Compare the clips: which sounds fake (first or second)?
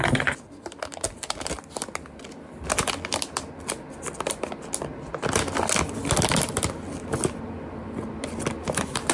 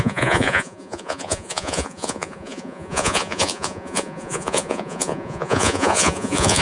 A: second